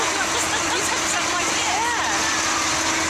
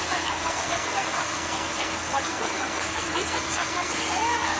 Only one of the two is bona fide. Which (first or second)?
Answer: first